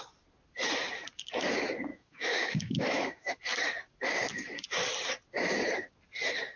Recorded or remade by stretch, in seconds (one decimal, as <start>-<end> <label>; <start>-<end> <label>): 0.0-1.9 recorded; 1.9-3.4 remade; 3.4-6.6 recorded